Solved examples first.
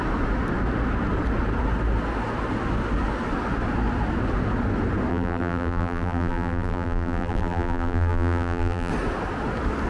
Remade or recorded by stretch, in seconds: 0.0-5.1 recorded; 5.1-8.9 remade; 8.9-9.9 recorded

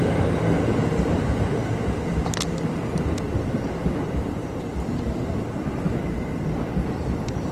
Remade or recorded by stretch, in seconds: 0.0-0.8 recorded; 0.8-2.2 remade; 2.2-3.8 recorded; 3.8-5.8 remade; 5.8-7.5 recorded

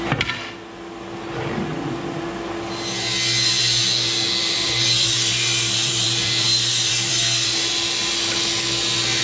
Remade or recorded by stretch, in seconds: 0.0-4.6 recorded; 4.6-7.6 remade; 7.6-9.2 recorded